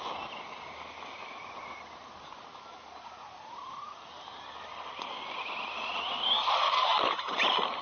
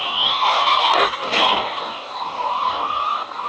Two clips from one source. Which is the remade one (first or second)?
second